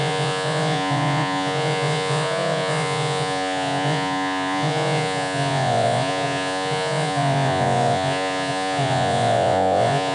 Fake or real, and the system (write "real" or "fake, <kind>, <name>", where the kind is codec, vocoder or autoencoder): fake, vocoder, Vocos